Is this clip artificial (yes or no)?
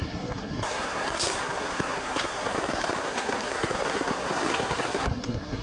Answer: yes